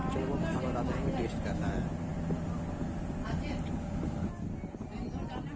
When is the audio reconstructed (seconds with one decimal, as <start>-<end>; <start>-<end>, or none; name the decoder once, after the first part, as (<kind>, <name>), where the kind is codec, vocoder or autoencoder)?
none